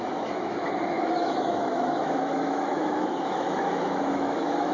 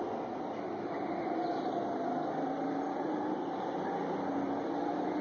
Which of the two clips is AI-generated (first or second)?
first